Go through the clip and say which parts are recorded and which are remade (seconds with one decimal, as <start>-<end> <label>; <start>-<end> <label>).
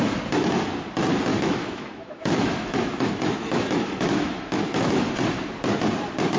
0.0-1.3 recorded; 1.3-5.1 remade; 5.1-6.4 recorded